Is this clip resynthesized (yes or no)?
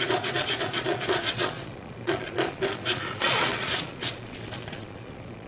yes